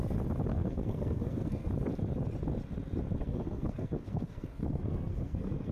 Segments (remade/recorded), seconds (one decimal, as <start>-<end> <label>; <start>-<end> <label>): 0.0-0.5 recorded; 0.5-1.7 remade; 1.7-3.2 recorded; 3.2-5.7 remade